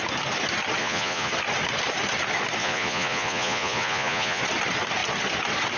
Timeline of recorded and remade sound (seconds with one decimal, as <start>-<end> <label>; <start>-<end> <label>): 0.0-0.8 recorded; 0.8-1.3 remade; 1.3-2.6 recorded; 2.6-4.4 remade; 4.4-5.8 recorded